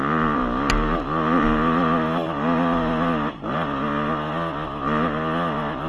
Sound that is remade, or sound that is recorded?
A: recorded